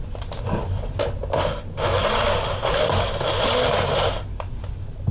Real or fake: real